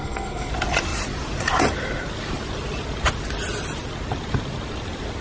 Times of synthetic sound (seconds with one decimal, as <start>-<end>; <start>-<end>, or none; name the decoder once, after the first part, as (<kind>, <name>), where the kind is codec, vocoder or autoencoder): 0.0-0.5 (codec, SNAC)